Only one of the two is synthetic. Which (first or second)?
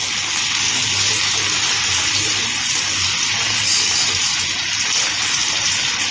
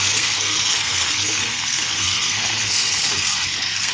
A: second